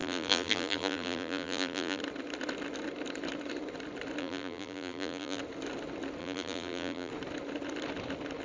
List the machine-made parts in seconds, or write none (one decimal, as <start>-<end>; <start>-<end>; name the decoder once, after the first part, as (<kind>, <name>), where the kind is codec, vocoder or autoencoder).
0.0-2.0 (vocoder, BigVGAN v2); 4.2-5.4; 6.2-7.1